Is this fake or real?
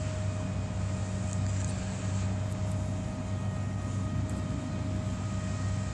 real